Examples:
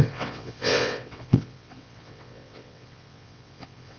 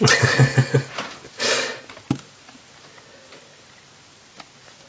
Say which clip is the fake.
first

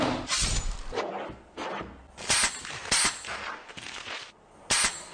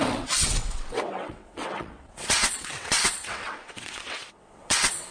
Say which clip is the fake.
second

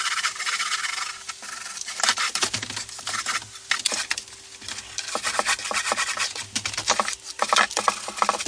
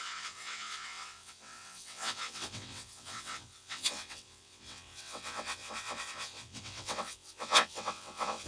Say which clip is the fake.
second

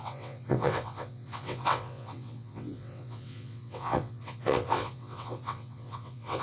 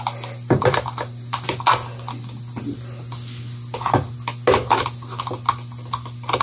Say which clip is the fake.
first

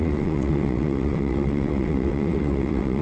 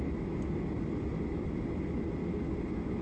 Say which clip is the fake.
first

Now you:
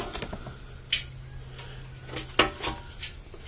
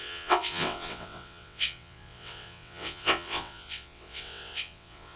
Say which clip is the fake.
second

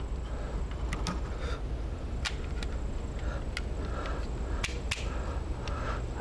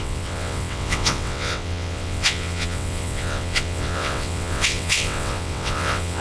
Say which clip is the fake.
second